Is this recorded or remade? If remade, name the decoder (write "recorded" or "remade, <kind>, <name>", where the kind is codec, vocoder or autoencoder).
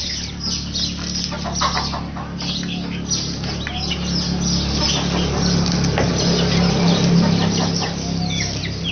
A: recorded